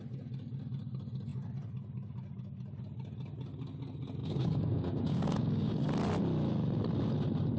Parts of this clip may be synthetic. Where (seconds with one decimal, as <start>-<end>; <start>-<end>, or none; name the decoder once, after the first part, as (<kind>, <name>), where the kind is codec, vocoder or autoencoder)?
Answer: 4.2-5.7 (codec, DAC)